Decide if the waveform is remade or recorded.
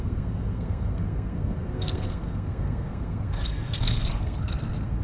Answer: remade